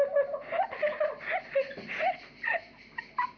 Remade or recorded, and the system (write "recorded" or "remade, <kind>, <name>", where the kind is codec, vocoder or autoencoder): recorded